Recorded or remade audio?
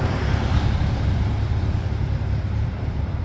remade